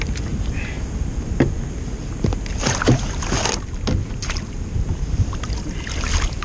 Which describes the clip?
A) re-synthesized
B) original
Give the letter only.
B